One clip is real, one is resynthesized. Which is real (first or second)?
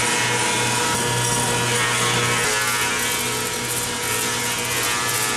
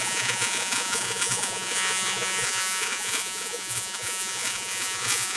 first